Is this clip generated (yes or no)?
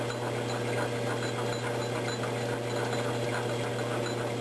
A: no